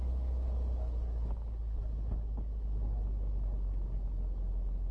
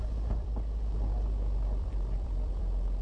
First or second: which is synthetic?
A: second